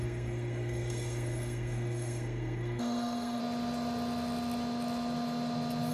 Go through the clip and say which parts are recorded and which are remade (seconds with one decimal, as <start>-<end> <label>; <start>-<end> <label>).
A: 0.0-3.4 remade; 3.4-5.9 recorded